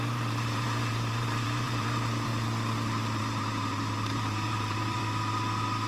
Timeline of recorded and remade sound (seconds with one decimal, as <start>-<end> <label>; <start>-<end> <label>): 0.0-2.3 remade; 2.3-3.2 recorded; 3.2-5.0 remade; 5.0-5.9 recorded